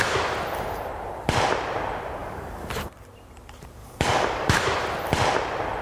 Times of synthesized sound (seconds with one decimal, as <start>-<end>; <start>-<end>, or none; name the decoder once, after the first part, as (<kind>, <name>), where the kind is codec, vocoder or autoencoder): 2.2-2.7 (codec, DAC); 3.8-4.6